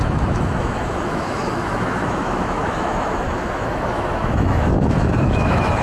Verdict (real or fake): fake